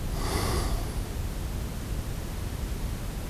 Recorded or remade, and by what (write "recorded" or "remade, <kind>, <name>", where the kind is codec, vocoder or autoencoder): recorded